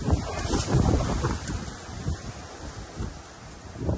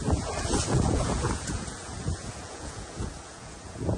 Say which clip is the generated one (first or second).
second